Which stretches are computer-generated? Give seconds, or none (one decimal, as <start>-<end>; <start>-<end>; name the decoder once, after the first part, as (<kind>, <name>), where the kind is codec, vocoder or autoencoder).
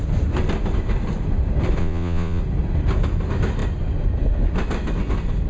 1.8-2.4 (vocoder, Vocos)